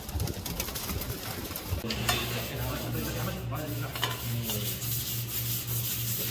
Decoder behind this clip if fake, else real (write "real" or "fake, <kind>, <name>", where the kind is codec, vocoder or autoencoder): real